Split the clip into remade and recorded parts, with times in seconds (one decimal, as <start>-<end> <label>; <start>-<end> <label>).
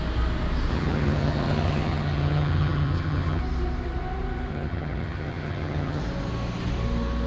0.0-0.7 recorded; 0.7-3.4 remade; 3.4-4.5 recorded; 4.5-6.0 remade; 6.0-7.3 recorded